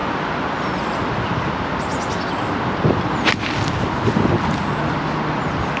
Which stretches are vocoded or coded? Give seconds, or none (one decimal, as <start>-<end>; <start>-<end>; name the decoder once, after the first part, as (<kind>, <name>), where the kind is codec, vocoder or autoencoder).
none

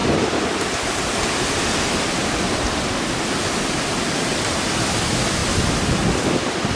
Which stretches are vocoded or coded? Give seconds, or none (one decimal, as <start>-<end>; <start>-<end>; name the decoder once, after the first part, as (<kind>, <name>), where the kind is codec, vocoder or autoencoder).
0.0-5.4 (vocoder, BigVGAN v2); 6.3-6.8

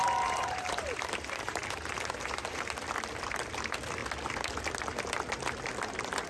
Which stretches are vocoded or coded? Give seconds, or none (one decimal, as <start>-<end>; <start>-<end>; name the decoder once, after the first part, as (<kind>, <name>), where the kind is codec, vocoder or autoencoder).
0.0-2.6 (vocoder, BigVGAN v2)

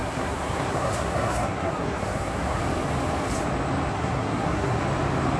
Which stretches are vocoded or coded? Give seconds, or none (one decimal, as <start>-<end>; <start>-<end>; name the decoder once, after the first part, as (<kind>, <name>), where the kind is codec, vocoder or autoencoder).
0.0-2.6 (codec, SNAC); 3.9-4.8

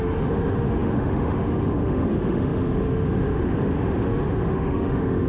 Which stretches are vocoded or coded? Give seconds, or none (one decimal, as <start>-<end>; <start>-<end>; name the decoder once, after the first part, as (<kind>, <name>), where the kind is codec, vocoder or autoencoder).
0.0-5.3 (autoencoder, DAC-VAE)

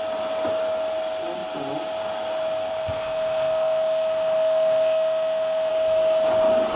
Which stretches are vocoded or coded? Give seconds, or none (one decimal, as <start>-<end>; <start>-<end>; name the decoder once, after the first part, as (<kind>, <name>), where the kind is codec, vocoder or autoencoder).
2.7-5.7 (autoencoder, DAC-VAE)

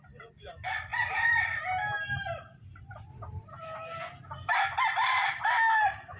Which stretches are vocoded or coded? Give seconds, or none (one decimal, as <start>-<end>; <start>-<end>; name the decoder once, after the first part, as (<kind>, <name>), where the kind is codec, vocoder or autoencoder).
0.9-1.6 (vocoder, BigVGAN v2)